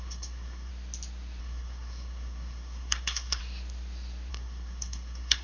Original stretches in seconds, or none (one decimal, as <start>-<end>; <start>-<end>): 0.7-1.4; 3.4-4.3